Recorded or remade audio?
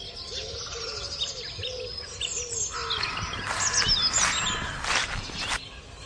recorded